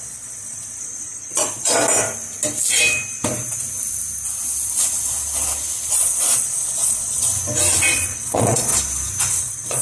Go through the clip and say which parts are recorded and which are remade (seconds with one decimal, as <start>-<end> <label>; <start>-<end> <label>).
0.0-1.8 remade; 1.8-5.9 recorded; 5.9-7.3 remade; 7.3-7.9 recorded; 7.9-8.7 remade; 8.7-9.4 recorded; 9.4-9.8 remade

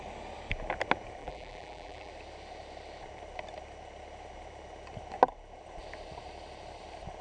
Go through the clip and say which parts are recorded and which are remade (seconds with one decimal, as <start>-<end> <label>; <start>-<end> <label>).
0.0-1.2 recorded; 1.2-2.1 remade; 2.1-7.2 recorded

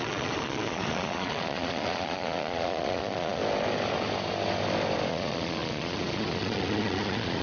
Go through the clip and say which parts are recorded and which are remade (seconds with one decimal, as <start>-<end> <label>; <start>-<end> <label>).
0.0-3.4 remade; 3.4-5.1 recorded; 5.1-7.4 remade

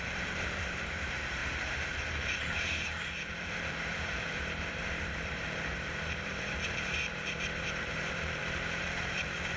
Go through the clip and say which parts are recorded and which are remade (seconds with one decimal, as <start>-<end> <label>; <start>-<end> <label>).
0.0-9.6 remade

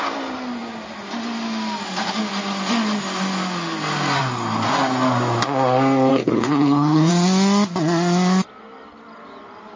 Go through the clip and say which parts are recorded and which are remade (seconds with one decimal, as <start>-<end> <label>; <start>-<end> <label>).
0.0-6.1 recorded; 6.1-7.1 remade; 7.1-9.8 recorded